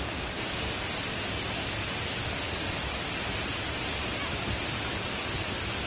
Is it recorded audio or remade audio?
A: recorded